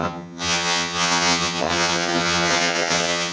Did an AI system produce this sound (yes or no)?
yes